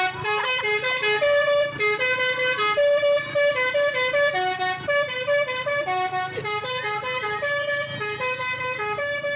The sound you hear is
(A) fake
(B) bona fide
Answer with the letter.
B